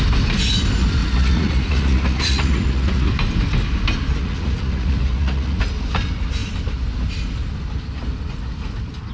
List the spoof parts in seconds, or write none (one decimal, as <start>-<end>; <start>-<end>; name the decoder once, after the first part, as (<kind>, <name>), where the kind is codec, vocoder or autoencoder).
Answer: 1.0-3.1 (vocoder, Vocos); 4.2-5.6